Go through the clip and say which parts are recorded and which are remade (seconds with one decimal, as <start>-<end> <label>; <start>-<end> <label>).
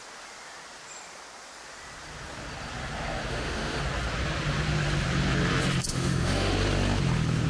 0.0-3.3 recorded; 3.3-3.8 remade; 3.8-5.9 recorded; 5.9-6.5 remade; 6.5-7.5 recorded